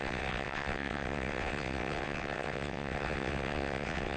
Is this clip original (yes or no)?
no